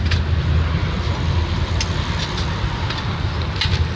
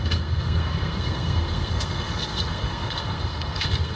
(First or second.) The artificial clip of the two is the second